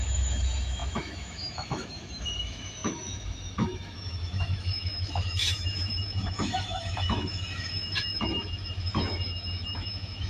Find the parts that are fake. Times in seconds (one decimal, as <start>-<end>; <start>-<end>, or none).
0.0-10.3

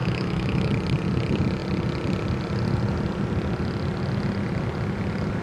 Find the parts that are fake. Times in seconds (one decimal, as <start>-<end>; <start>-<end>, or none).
0.0-0.7

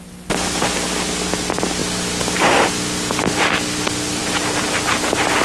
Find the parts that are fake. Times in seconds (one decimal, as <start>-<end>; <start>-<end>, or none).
none

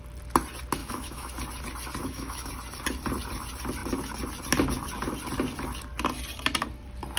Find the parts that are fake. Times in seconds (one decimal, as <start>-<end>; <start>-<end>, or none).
0.8-1.3; 2.0-2.5

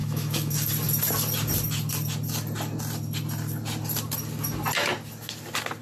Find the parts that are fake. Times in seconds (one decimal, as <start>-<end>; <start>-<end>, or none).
0.0-0.7

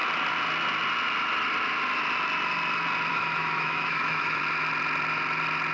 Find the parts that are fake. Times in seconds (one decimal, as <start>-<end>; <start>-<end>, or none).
3.1-4.4

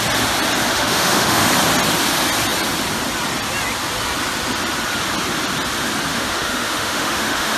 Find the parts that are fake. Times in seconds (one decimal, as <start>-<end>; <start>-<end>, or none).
0.7-1.5; 6.1-7.6